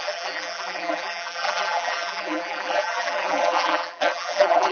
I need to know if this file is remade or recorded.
remade